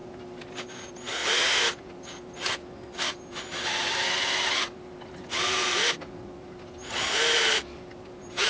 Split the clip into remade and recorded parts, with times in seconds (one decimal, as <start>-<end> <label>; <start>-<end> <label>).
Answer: 0.0-8.5 recorded